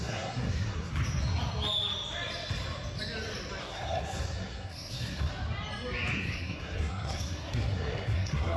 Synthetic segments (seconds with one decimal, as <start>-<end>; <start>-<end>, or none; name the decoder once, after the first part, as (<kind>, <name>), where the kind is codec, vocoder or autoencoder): 0.0-0.9 (codec, SNAC); 3.6-5.3; 6.1-8.6